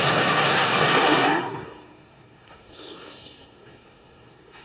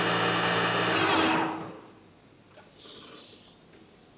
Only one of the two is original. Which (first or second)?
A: second